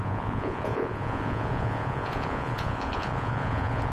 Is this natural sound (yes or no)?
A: no